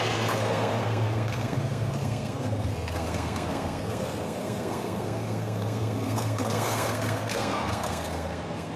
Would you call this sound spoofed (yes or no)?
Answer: yes